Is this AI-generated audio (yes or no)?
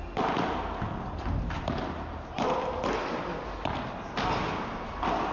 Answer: no